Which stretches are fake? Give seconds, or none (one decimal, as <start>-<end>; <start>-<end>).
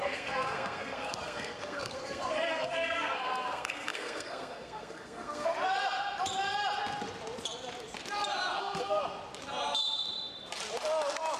0.0-5.5; 8.6-9.0